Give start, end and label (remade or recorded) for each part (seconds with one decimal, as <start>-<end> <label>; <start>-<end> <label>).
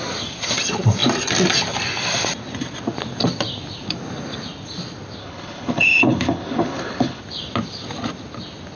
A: 0.0-5.2 recorded; 5.2-7.2 remade; 7.2-8.8 recorded